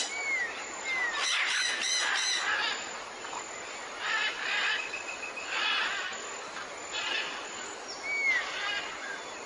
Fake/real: real